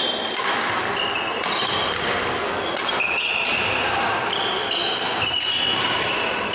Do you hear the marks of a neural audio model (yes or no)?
no